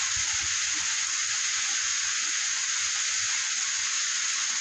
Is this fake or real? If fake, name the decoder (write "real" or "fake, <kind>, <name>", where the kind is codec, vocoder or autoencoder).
fake, vocoder, Vocos